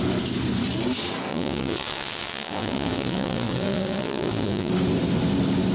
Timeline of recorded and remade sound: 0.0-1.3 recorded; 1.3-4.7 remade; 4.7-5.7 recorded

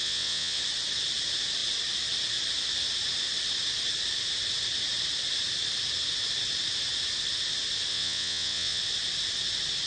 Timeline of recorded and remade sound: 0.0-0.6 remade; 0.6-7.9 recorded; 7.9-8.8 remade; 8.8-9.9 recorded

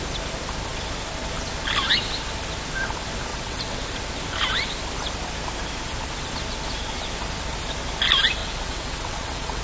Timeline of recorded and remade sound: 0.0-3.3 recorded; 3.3-3.9 remade; 3.9-8.4 recorded; 8.4-9.6 remade

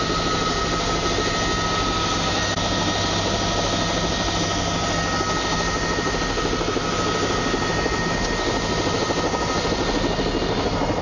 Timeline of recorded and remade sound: 0.0-11.0 recorded

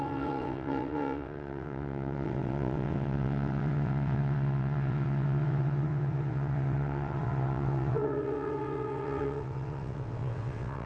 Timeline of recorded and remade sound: 0.0-10.9 remade